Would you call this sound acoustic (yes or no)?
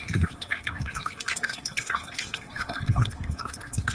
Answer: no